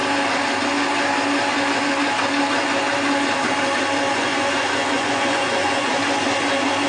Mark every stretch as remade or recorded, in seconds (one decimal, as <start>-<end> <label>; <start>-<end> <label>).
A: 0.0-4.1 recorded; 4.1-5.9 remade; 5.9-6.9 recorded